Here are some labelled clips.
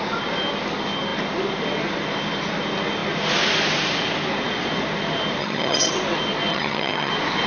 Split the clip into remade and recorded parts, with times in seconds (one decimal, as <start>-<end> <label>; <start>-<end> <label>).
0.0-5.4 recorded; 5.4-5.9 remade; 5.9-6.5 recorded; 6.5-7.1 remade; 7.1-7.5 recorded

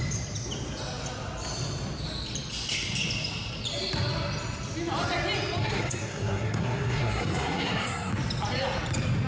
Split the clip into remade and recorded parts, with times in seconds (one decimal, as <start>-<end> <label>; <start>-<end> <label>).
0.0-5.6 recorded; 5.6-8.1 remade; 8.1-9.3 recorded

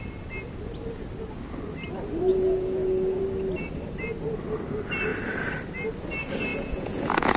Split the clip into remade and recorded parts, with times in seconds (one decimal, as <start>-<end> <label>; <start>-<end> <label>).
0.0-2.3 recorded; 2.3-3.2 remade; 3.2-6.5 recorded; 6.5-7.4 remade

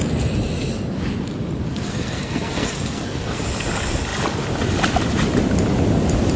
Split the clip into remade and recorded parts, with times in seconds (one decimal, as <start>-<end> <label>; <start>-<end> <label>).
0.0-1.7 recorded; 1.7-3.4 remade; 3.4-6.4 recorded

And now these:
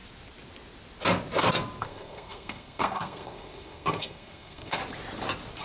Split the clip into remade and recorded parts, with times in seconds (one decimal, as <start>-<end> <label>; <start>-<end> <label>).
0.0-1.8 recorded; 1.8-4.8 remade; 4.8-5.6 recorded

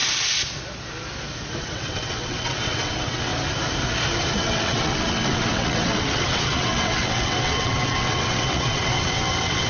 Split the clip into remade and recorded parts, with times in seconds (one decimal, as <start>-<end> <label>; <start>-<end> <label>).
0.0-1.6 recorded; 1.6-3.3 remade; 3.3-4.4 recorded; 4.4-9.7 remade